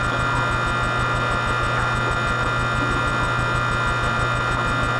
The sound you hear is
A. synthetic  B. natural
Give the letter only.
B